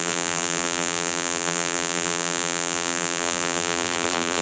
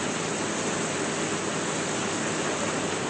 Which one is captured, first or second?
second